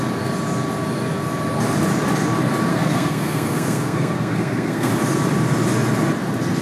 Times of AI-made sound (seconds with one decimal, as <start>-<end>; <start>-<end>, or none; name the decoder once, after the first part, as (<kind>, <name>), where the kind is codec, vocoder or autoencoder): 2.7-4.9 (codec, SNAC)